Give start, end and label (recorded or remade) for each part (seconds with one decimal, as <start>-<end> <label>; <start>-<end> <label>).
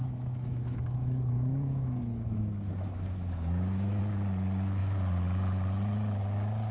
0.0-4.0 remade; 4.0-6.7 recorded